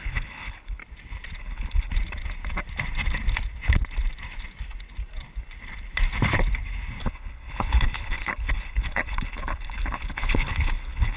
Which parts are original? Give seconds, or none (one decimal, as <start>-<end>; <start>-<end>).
0.8-1.4; 1.9-7.0